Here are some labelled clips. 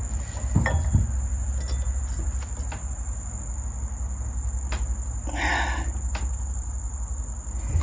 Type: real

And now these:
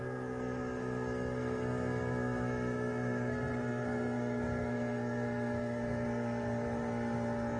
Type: fake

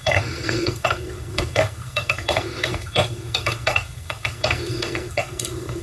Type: fake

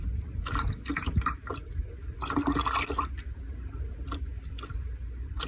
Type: real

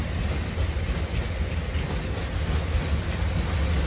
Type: real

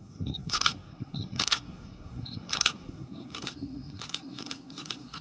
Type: fake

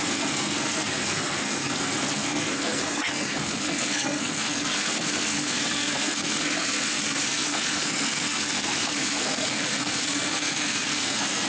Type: fake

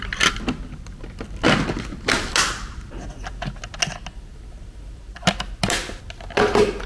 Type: real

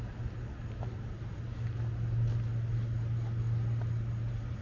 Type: real